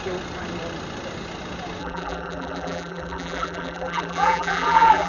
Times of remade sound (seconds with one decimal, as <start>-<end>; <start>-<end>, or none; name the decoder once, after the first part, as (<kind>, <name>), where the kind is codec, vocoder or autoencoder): 1.8-5.1 (vocoder, BigVGAN v2)